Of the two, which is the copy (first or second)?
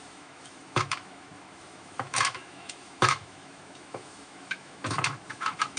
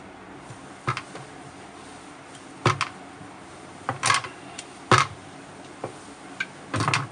first